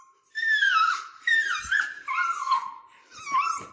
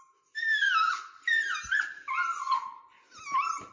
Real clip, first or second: second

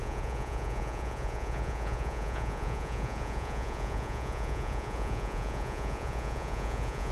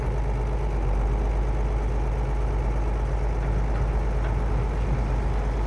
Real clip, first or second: second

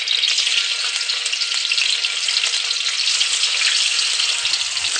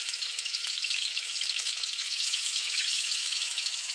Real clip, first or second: first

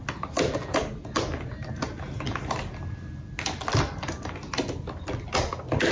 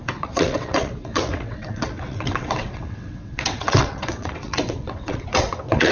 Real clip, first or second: first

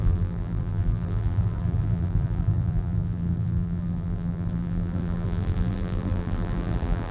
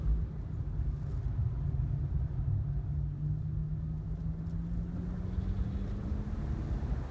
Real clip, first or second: second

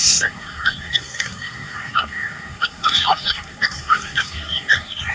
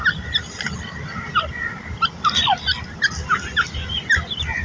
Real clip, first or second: second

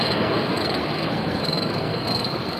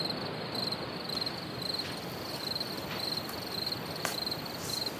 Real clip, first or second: second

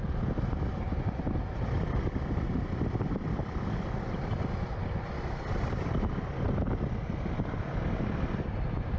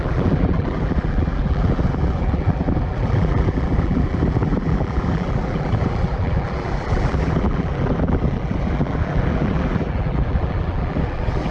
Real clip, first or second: first